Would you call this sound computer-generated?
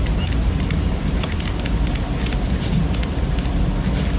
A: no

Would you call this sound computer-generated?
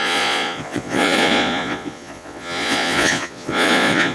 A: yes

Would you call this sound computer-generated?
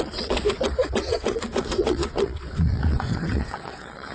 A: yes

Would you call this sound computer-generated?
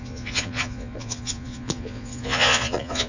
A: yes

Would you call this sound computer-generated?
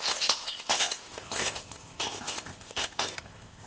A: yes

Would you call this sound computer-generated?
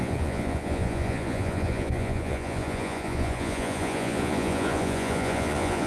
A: yes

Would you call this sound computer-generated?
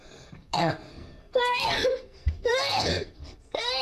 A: yes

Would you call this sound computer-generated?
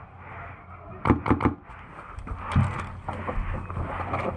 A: no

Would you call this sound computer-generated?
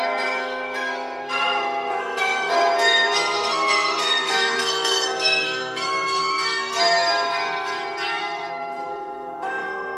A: yes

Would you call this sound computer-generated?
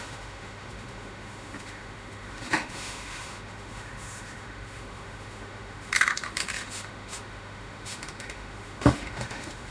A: yes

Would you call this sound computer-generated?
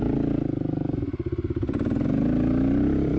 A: no